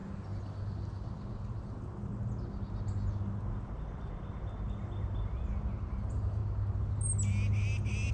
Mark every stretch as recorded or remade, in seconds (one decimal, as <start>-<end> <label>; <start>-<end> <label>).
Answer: 0.0-1.6 recorded; 1.6-2.1 remade; 2.1-5.9 recorded; 5.9-6.4 remade; 6.4-8.1 recorded